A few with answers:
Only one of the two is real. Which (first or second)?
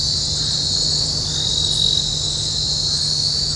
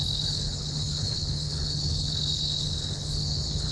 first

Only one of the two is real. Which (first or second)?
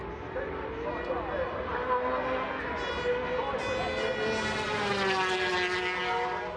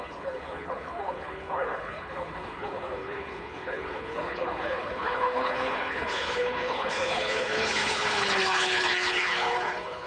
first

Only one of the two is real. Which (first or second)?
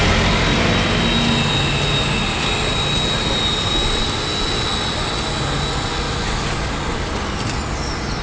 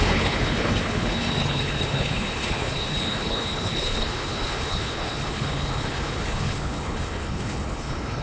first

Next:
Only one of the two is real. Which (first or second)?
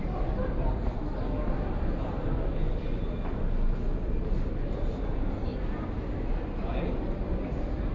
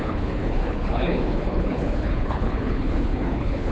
first